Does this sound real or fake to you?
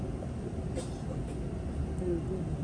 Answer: real